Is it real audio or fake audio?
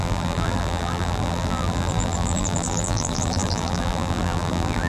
fake